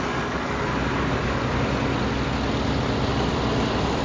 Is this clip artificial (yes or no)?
no